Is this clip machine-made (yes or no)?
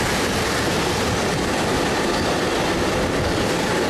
no